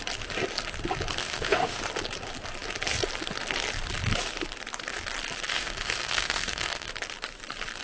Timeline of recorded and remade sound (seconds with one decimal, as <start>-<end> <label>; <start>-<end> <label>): 0.0-1.2 recorded; 1.2-1.8 remade; 1.8-5.5 recorded; 5.5-6.9 remade; 6.9-7.8 recorded